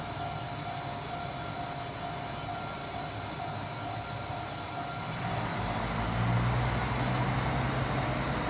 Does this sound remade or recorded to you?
recorded